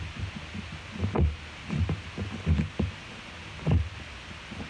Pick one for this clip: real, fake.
real